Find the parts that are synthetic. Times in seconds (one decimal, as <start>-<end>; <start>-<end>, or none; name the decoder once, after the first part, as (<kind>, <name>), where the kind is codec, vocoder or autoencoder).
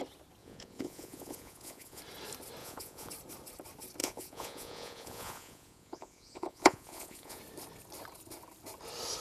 0.4-2.0 (vocoder, Vocos); 2.6-3.1; 4.0-7.4